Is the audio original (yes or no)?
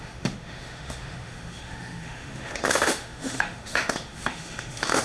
no